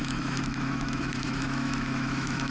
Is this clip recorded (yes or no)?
no